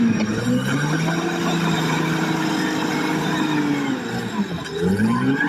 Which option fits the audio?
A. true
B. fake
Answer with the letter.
A